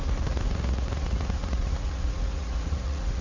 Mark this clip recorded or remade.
remade